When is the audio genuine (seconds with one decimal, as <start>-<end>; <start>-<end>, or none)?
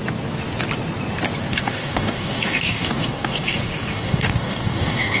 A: 0.0-1.5